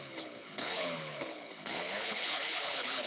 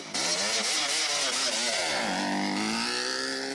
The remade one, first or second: first